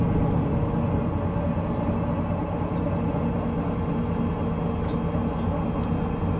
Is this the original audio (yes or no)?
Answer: yes